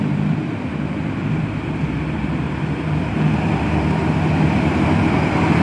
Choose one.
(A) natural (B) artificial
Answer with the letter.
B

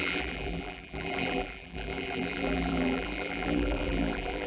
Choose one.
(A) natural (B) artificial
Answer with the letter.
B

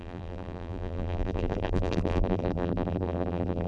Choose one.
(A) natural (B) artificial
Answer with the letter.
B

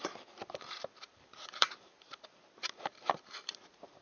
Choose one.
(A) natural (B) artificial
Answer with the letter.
B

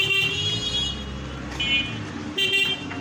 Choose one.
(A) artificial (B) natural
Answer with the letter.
B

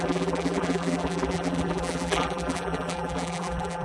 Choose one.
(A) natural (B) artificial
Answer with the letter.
B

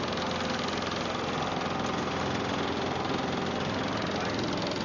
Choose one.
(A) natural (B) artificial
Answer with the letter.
A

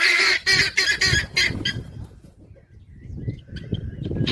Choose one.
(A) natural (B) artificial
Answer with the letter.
A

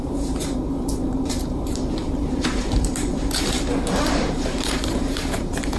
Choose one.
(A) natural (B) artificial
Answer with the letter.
B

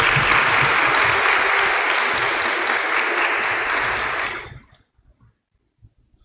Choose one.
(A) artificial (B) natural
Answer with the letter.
B